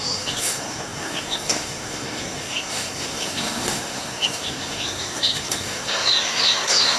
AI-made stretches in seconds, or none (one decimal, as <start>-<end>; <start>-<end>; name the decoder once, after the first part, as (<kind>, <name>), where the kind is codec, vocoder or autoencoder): 0.0-7.0 (codec, SNAC)